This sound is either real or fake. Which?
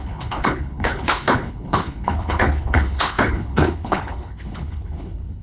fake